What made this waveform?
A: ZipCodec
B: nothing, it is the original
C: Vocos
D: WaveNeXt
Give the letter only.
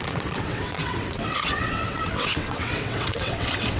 D